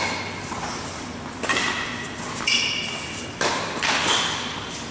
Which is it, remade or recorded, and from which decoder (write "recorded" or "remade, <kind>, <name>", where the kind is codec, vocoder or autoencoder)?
recorded